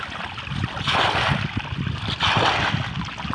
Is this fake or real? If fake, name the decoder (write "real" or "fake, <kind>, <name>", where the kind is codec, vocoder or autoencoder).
real